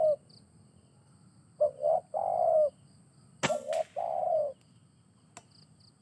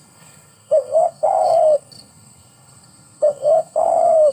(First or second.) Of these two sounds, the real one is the first